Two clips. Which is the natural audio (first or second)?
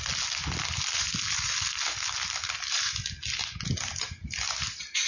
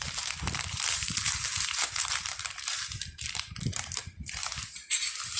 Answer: first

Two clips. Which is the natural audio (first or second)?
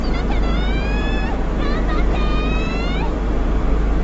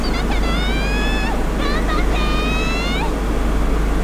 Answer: second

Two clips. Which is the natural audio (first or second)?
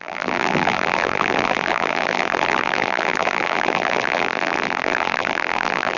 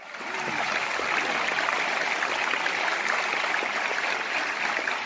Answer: second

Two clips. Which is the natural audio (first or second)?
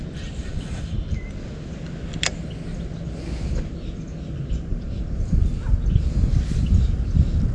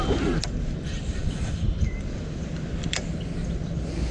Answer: first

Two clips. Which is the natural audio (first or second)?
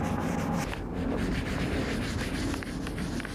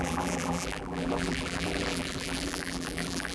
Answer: first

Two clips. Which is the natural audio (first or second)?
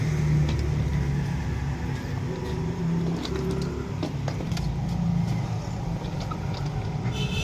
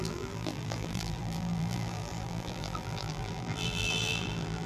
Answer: first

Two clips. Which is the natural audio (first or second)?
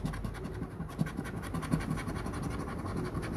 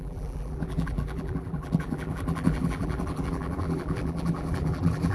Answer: first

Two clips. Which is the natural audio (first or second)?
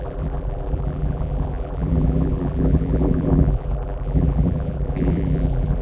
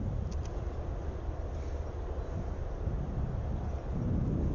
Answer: second